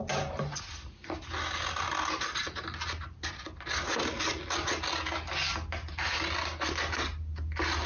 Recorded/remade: recorded